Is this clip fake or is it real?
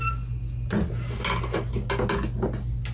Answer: real